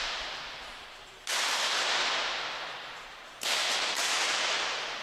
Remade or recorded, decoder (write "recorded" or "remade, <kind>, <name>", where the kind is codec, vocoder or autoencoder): remade, vocoder, BigVGAN v2